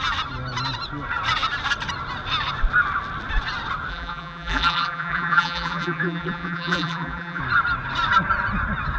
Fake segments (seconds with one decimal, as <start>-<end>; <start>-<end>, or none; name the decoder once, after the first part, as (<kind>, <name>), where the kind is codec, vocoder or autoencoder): 3.9-7.4 (vocoder, BigVGAN v2)